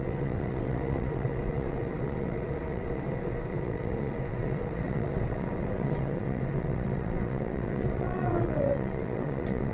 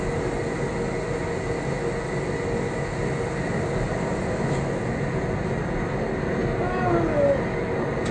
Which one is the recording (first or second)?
second